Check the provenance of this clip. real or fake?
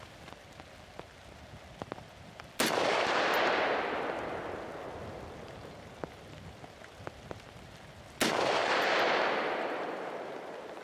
real